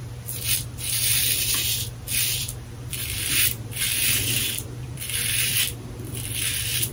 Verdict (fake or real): fake